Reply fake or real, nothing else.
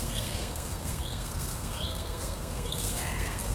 fake